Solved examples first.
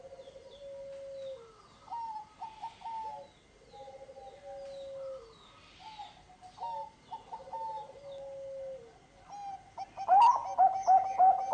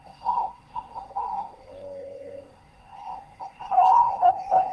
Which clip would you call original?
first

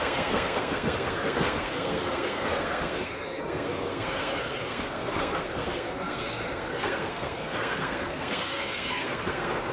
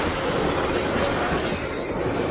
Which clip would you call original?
second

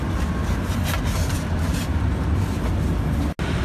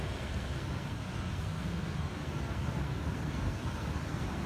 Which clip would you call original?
first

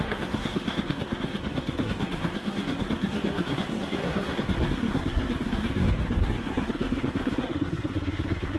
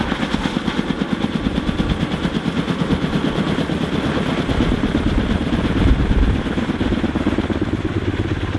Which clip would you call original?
second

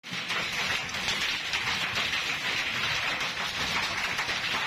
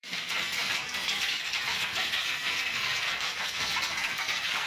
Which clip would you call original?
first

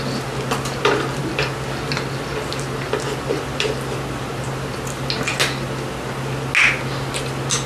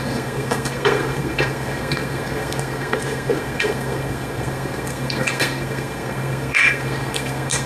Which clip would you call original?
first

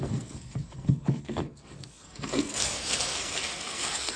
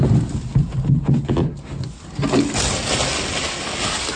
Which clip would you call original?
second